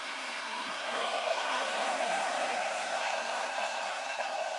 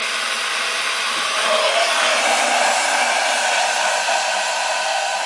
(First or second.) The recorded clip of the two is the second